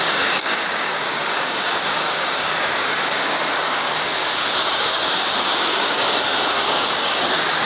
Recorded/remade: remade